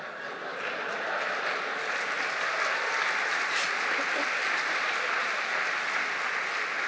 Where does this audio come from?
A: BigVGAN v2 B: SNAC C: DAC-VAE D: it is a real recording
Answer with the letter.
D